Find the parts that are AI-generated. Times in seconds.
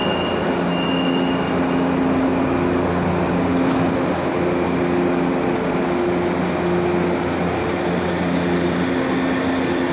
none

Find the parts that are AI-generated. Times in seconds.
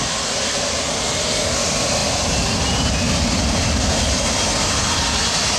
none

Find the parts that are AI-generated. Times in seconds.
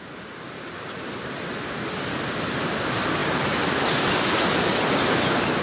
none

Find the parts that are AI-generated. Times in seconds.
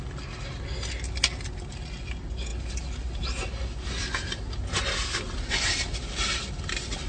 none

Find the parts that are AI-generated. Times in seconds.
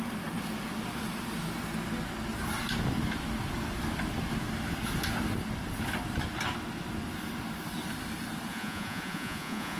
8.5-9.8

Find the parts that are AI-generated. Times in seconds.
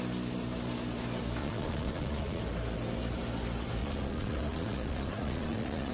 1.4-2.4; 3.8-5.9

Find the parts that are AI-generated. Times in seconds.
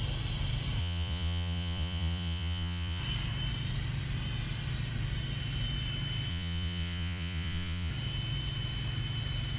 0.8-3.0; 6.3-7.9